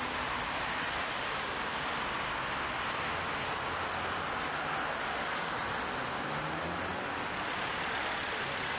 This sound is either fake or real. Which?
real